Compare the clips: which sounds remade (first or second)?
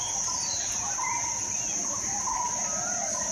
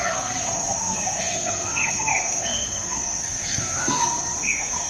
second